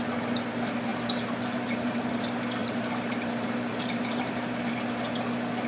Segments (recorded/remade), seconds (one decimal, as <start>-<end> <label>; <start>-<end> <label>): 0.0-0.9 recorded; 0.9-2.1 remade; 2.1-2.6 recorded; 2.6-4.7 remade; 4.7-5.7 recorded